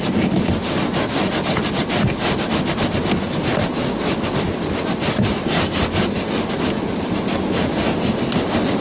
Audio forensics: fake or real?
real